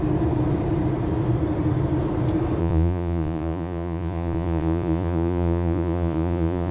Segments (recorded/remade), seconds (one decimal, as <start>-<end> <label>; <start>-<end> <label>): 0.0-2.6 recorded; 2.6-6.7 remade